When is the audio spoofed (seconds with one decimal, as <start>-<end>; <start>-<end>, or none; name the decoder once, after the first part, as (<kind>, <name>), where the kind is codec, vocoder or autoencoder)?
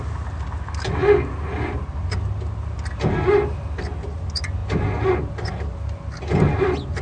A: none